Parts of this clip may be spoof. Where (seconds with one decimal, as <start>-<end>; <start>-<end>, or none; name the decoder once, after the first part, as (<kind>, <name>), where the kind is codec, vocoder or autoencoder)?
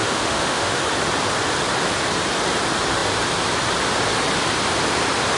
0.0-0.8 (autoencoder, DAC-VAE)